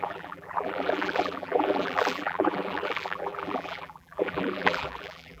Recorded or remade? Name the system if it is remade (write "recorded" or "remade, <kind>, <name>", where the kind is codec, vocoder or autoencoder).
remade, vocoder, BigVGAN v2